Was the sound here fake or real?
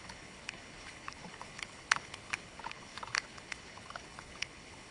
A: fake